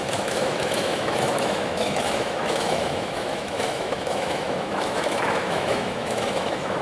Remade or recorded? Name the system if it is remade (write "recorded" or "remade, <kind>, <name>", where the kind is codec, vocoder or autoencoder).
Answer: remade, autoencoder, DAC-VAE